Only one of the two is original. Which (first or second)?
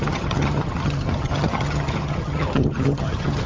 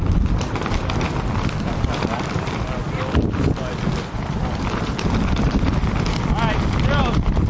second